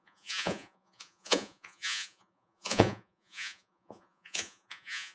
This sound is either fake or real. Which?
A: fake